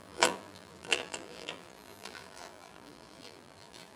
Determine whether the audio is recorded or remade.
remade